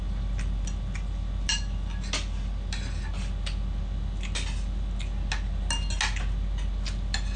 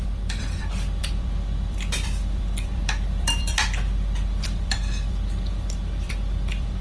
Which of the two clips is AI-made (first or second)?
second